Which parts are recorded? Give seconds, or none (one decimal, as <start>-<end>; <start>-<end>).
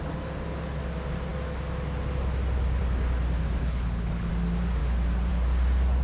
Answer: 0.0-3.6; 4.3-6.0